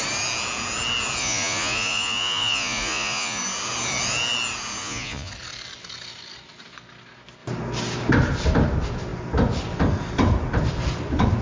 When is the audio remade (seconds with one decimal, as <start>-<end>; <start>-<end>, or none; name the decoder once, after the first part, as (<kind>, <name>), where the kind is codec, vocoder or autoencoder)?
1.2-3.4 (vocoder, Vocos); 4.8-5.3